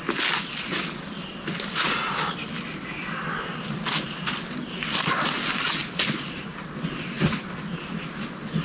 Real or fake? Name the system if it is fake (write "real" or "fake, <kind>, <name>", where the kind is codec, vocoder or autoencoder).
real